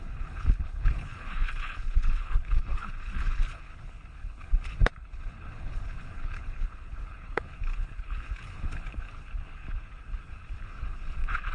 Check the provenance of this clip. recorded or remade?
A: remade